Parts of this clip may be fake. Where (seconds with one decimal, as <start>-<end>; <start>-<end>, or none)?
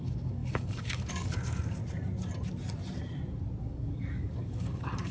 0.0-1.8; 3.6-5.1